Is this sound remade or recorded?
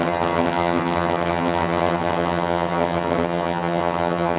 remade